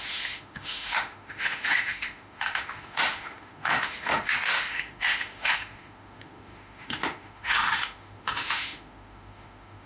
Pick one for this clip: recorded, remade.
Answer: remade